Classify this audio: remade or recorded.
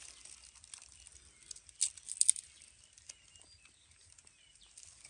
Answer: recorded